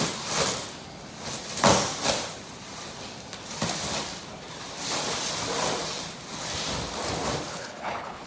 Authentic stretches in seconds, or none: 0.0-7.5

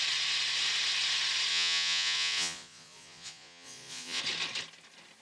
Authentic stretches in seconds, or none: 0.0-1.5; 4.2-5.2

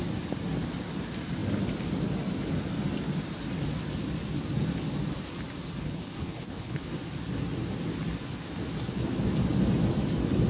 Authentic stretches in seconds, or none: 0.0-5.8; 6.9-10.5

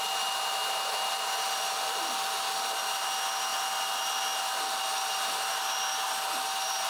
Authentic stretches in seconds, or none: 0.0-6.9

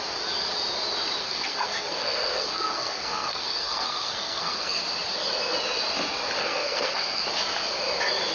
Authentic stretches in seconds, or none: 0.0-1.2; 4.8-6.4; 7.2-8.3